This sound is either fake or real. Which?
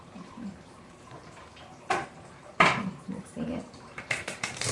fake